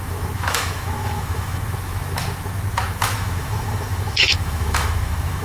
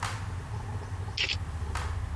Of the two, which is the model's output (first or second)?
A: first